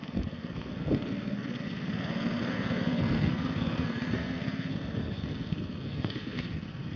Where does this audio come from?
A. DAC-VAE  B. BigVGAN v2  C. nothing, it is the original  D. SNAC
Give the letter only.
D